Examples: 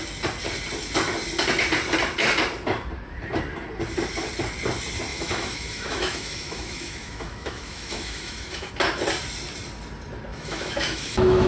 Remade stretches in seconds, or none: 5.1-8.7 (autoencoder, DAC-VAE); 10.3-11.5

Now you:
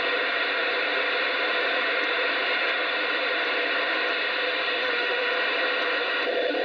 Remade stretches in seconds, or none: 4.8-5.3 (autoencoder, DAC-VAE)

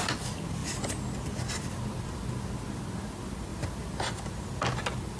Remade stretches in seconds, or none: none

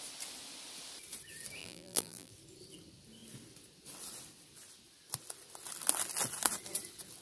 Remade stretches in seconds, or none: 1.6-2.3 (vocoder, BigVGAN v2)